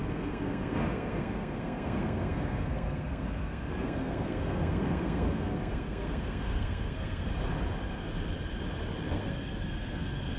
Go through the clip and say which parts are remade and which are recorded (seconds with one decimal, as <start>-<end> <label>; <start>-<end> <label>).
0.0-7.3 remade; 7.3-9.1 recorded; 9.1-10.4 remade